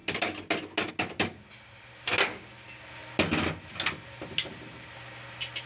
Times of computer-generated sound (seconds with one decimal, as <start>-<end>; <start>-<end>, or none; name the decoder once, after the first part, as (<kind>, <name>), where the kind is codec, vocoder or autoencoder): none

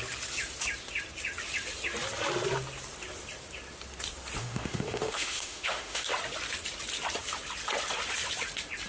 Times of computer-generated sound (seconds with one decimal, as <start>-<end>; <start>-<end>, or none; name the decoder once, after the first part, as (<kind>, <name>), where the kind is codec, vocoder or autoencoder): 4.4-6.1 (autoencoder, DAC-VAE)

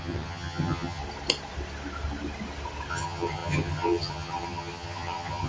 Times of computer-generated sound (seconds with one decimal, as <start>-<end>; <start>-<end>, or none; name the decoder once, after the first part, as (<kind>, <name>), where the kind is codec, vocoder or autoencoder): 0.0-1.0 (vocoder, HiFi-GAN); 2.9-5.5

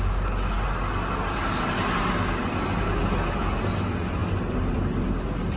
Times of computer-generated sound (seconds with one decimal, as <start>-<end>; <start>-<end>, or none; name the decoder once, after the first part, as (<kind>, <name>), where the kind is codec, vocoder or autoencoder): none

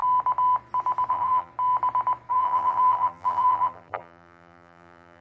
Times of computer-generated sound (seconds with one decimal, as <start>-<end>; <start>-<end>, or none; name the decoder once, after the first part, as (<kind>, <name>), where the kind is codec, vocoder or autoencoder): 1.1-1.5 (vocoder, BigVGAN v2); 2.3-5.2